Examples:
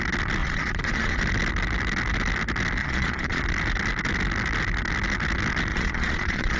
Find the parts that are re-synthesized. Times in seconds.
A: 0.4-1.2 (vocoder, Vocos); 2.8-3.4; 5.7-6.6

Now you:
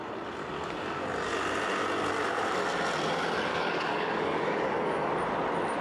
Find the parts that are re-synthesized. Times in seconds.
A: 3.5-5.1 (codec, DAC)

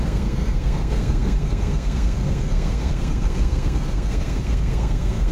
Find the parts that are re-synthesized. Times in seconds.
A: 0.0-5.3 (codec, SNAC)